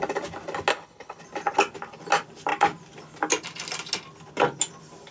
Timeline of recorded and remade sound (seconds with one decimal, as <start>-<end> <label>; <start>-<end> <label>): 0.0-0.7 recorded; 0.7-1.2 remade; 1.2-5.1 recorded